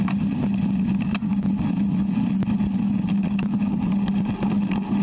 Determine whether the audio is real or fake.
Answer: real